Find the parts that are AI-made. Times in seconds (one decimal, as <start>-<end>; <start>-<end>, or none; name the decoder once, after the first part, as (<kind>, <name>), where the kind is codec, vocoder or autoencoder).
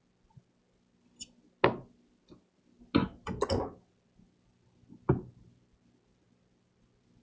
none